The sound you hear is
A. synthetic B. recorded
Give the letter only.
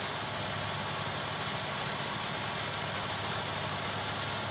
B